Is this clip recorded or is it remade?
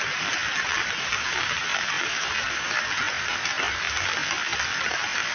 recorded